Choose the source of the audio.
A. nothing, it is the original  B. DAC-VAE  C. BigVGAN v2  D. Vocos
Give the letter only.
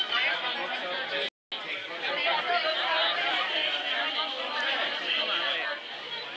A